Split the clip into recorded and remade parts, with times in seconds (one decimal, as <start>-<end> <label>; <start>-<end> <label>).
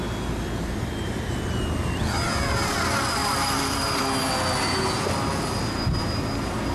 0.0-3.2 recorded; 3.2-4.0 remade; 4.0-6.7 recorded